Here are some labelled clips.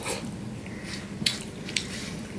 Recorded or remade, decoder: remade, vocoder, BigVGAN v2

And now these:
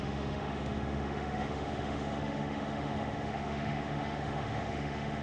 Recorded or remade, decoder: remade, autoencoder, DAC-VAE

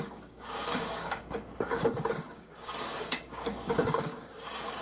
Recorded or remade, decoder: remade, codec, DAC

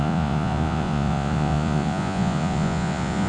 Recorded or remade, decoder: remade, vocoder, Vocos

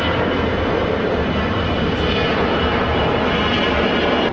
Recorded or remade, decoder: recorded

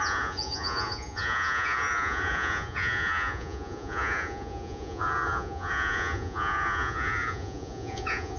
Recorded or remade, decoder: remade, vocoder, Vocos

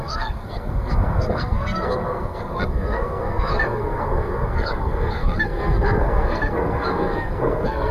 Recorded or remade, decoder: remade, codec, SNAC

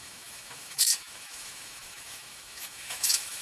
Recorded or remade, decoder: remade, autoencoder, DAC-VAE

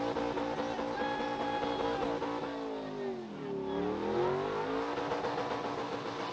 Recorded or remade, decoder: recorded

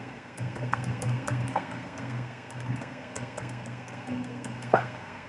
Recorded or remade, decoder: remade, codec, SNAC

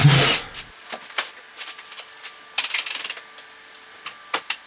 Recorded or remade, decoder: recorded